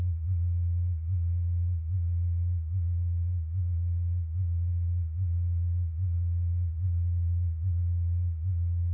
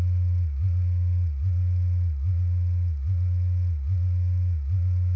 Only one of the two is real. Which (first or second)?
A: second